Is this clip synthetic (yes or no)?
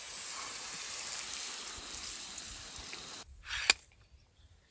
no